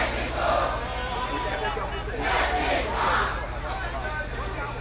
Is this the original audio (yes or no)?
yes